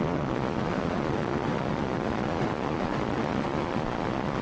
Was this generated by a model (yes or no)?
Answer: yes